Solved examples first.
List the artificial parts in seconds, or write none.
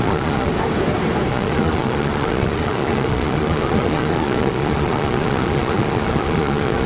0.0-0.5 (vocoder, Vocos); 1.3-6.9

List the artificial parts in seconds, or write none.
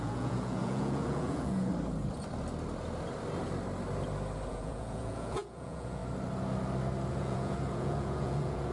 0.0-1.7 (vocoder, Vocos); 4.5-6.0; 7.1-8.7